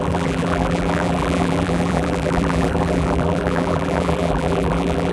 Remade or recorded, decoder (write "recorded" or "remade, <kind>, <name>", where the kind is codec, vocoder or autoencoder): remade, vocoder, BigVGAN v2